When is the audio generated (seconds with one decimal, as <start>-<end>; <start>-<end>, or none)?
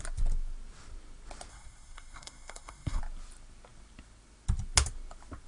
1.5-3.0